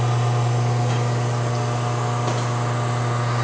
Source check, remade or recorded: recorded